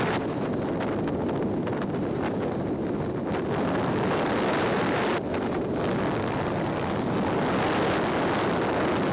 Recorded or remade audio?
recorded